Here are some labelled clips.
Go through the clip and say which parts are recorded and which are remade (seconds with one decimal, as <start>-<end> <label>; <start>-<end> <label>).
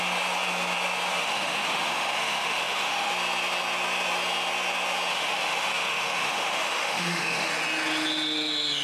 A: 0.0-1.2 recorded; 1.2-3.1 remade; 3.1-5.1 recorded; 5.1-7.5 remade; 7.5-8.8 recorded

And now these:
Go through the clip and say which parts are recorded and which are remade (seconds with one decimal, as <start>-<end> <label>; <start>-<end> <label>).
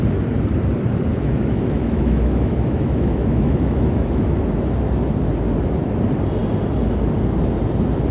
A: 0.0-1.1 recorded; 1.1-4.4 remade; 4.4-8.1 recorded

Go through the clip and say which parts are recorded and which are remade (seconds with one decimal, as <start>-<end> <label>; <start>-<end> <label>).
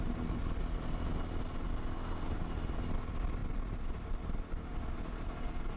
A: 0.0-5.8 recorded